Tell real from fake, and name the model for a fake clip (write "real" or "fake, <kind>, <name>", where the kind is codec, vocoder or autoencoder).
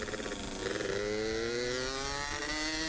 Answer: real